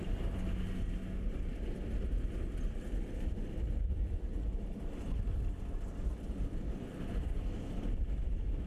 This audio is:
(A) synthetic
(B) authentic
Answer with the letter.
B